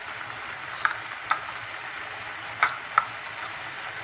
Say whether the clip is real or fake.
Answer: real